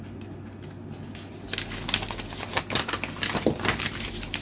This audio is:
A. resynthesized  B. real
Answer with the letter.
B